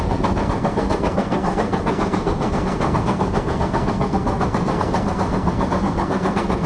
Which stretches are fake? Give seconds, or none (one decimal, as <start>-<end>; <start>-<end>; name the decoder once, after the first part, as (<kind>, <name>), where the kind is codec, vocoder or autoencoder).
0.0-6.7 (codec, SNAC)